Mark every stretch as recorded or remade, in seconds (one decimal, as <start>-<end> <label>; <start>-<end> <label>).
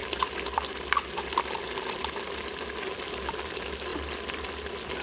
0.0-5.0 recorded